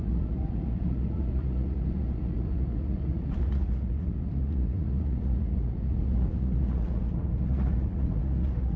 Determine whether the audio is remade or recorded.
remade